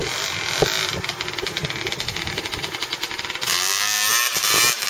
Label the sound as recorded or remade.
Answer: recorded